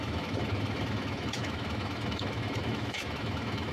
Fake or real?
fake